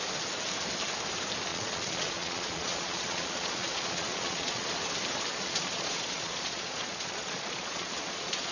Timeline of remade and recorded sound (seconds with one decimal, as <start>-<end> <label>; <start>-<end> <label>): 0.0-1.5 recorded; 1.5-4.7 remade; 4.7-5.3 recorded; 5.3-8.5 remade